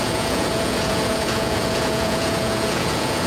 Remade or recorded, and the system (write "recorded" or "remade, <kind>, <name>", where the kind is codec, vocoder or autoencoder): remade, vocoder, Vocos